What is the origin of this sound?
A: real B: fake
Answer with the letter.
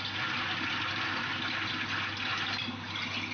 A